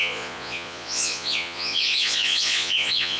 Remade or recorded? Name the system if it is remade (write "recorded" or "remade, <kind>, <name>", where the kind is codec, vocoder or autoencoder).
remade, vocoder, Vocos